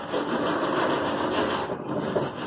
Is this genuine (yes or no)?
yes